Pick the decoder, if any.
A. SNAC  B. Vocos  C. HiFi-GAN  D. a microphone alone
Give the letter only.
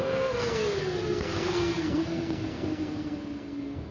A